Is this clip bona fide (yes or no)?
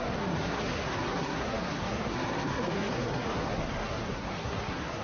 no